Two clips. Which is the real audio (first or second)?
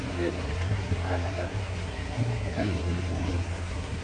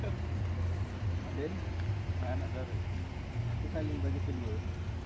second